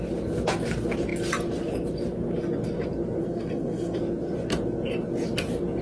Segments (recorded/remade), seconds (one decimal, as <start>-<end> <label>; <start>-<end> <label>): 0.0-3.2 recorded; 3.2-4.0 remade; 4.0-5.8 recorded